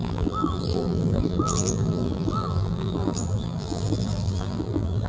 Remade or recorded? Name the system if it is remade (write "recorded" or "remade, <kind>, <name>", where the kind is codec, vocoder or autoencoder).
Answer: remade, vocoder, BigVGAN v2